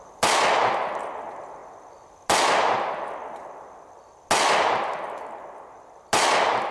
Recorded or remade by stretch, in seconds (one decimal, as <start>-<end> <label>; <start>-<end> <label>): 0.0-6.7 recorded